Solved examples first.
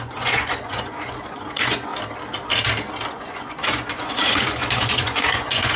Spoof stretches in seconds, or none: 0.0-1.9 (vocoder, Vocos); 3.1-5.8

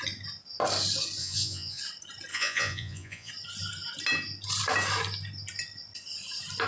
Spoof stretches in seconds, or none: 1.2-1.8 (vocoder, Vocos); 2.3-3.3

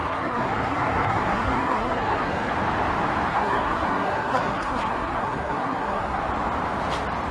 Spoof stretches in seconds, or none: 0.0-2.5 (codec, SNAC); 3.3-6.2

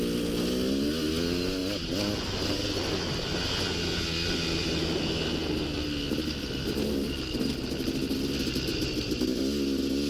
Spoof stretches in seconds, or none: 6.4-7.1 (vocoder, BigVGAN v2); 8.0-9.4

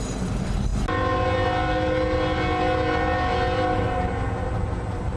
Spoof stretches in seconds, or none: none

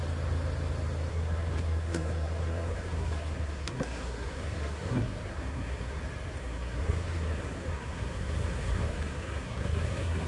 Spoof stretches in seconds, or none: 1.1-6.0 (codec, SNAC); 6.4-10.3